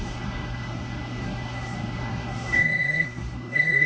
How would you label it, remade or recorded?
remade